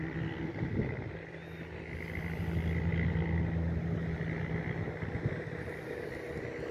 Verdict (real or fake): real